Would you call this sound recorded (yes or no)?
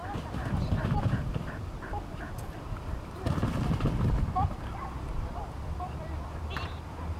no